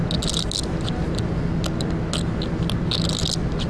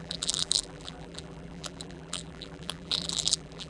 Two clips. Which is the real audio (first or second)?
first